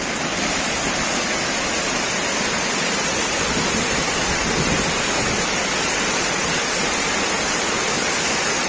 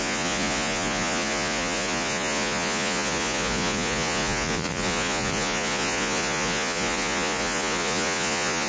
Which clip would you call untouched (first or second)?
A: first